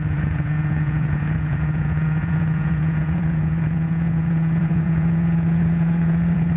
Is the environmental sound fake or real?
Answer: fake